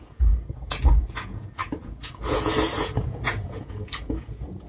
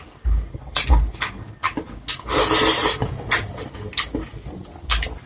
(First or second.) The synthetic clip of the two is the first